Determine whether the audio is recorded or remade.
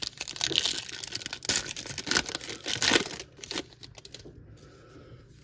recorded